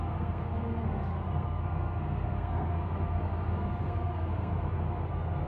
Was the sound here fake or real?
fake